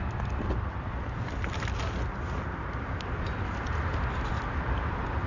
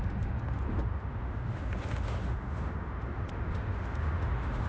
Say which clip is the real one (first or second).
first